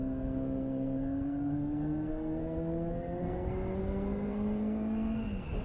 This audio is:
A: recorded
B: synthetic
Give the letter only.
B